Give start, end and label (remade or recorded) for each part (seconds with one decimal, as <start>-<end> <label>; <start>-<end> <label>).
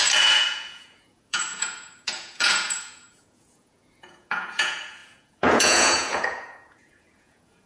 0.0-7.7 remade